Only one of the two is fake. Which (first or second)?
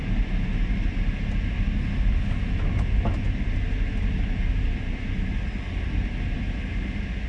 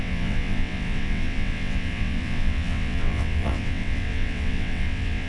second